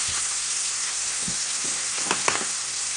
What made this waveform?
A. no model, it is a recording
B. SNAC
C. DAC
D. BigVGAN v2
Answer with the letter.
B